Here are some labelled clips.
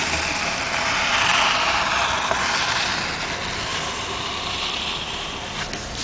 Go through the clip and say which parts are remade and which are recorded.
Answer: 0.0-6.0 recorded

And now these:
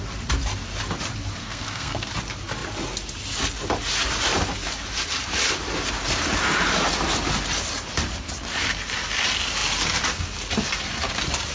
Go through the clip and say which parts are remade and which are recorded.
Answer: 0.0-1.4 recorded; 1.4-2.1 remade; 2.1-11.5 recorded

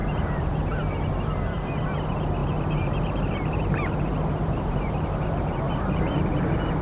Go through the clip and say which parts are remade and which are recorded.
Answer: 0.0-0.6 remade; 0.6-2.4 recorded; 2.4-6.8 remade

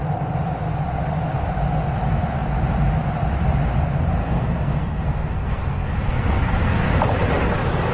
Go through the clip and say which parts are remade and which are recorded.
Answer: 0.0-4.2 recorded; 4.2-6.9 remade; 6.9-7.9 recorded

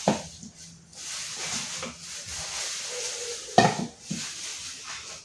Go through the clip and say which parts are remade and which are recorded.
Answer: 0.0-0.9 remade; 0.9-4.0 recorded; 4.0-5.2 remade

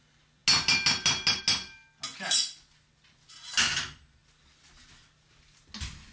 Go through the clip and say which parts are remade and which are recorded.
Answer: 0.0-6.1 recorded

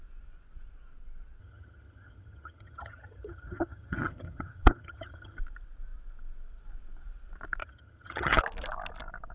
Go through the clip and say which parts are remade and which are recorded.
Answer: 0.0-1.4 recorded; 1.4-5.4 remade; 5.4-7.6 recorded; 7.6-8.4 remade; 8.4-9.3 recorded